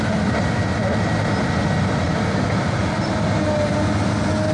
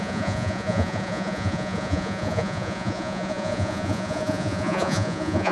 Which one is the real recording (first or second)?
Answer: first